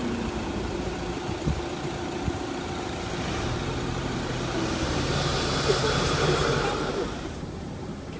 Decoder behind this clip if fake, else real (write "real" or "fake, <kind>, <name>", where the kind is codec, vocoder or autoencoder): fake, vocoder, BigVGAN v2